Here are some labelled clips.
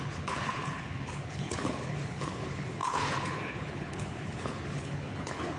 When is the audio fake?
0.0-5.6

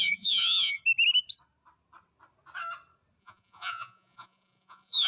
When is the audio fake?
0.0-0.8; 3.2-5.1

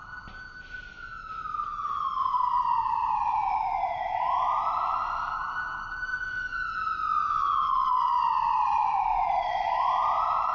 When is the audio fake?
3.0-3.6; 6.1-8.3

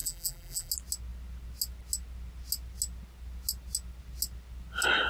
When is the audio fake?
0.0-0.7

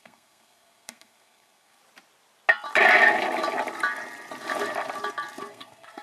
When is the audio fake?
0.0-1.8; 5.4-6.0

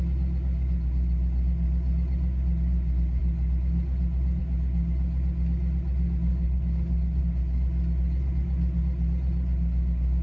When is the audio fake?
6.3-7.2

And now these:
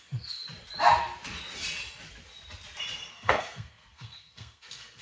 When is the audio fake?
0.0-0.4; 3.1-5.0

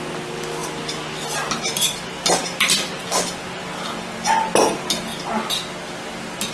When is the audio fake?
none